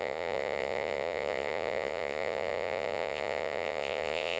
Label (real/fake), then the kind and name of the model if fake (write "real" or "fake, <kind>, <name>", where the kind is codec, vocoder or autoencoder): fake, vocoder, Vocos